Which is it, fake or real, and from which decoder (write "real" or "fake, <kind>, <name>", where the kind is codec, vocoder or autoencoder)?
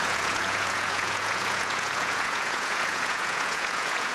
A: fake, vocoder, Vocos